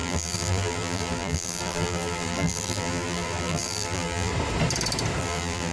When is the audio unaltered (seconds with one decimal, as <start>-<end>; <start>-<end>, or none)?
4.3-5.2